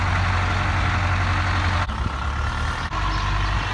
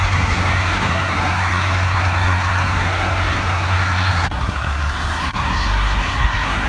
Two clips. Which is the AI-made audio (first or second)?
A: second